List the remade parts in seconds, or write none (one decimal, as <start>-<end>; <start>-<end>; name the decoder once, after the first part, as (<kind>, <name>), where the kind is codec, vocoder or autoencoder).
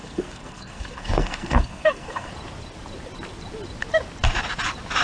0.0-2.3 (codec, SNAC)